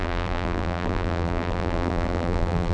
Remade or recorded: remade